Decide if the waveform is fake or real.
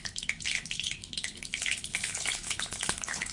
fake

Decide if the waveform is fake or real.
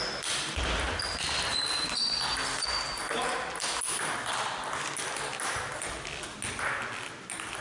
real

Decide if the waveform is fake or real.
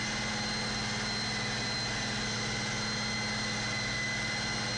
real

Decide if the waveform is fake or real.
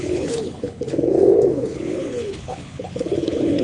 fake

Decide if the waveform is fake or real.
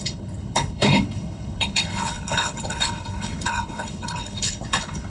fake